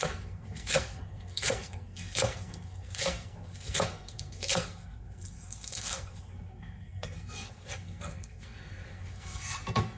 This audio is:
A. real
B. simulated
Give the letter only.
B